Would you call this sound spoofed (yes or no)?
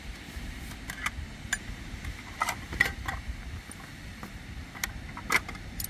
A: no